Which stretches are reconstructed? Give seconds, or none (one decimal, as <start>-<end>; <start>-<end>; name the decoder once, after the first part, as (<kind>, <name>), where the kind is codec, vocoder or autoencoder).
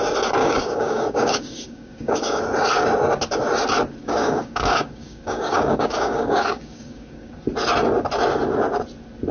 0.4-2.4 (codec, DAC); 4.0-7.3